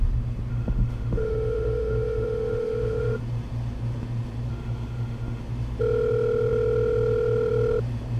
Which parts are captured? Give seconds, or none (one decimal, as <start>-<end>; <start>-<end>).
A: 0.0-0.5; 3.2-4.5; 5.4-8.2